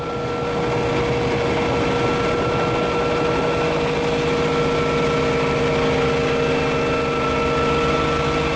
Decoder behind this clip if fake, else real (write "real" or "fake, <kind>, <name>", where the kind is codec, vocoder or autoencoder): real